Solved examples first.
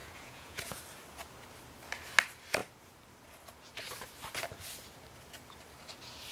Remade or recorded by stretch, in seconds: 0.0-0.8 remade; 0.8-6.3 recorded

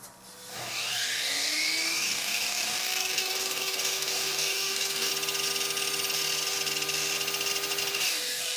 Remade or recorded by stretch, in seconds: 0.0-0.5 recorded; 0.5-5.1 remade; 5.1-7.9 recorded; 7.9-8.6 remade

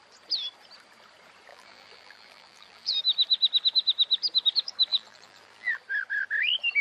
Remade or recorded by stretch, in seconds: 0.0-1.5 recorded; 1.5-3.0 remade; 3.0-4.9 recorded; 4.9-5.8 remade; 5.8-6.8 recorded

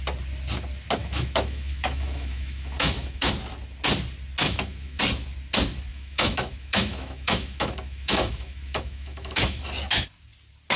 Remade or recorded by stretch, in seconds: 0.0-1.0 recorded; 1.0-3.3 remade; 3.3-4.4 recorded; 4.4-5.0 remade; 5.0-5.9 recorded; 5.9-9.6 remade; 9.6-10.8 recorded

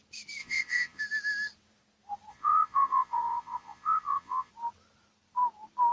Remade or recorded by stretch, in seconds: 0.0-0.4 recorded; 0.4-1.0 remade; 1.0-2.3 recorded; 2.3-4.5 remade; 4.5-5.9 recorded

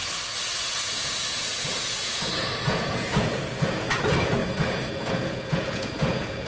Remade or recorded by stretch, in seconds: 0.0-0.6 recorded; 0.6-6.5 remade